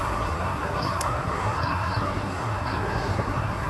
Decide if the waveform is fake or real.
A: fake